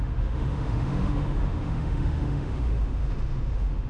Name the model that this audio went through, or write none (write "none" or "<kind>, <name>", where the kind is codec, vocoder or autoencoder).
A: autoencoder, DAC-VAE